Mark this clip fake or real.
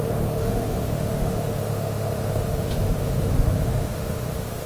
fake